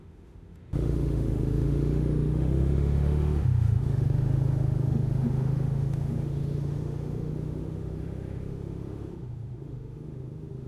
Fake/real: fake